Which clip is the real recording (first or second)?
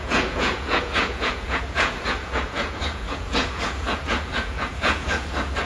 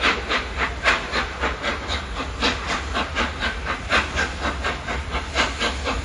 second